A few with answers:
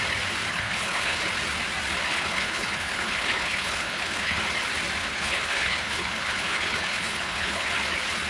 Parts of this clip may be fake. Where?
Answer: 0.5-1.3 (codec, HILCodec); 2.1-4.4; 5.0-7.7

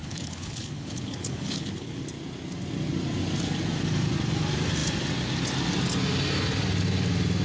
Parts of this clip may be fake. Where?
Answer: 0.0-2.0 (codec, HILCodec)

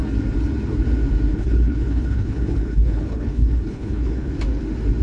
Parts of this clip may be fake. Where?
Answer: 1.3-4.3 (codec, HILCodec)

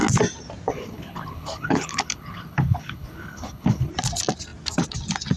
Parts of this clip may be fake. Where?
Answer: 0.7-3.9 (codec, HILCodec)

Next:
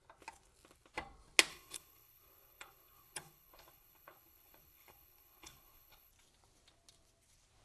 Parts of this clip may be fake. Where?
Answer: 1.5-6.1 (codec, HILCodec)